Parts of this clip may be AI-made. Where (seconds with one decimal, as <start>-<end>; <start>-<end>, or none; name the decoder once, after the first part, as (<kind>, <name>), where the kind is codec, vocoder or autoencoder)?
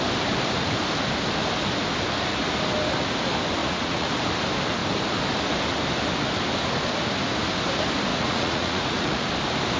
3.6-4.1 (vocoder, Vocos); 8.1-9.3